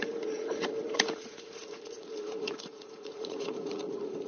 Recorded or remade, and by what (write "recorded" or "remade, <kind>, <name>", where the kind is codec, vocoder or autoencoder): remade, vocoder, Vocos